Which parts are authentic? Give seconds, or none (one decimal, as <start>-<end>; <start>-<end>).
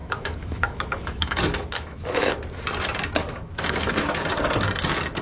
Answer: 2.3-3.2; 3.9-5.2